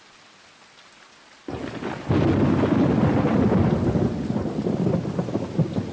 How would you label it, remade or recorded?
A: recorded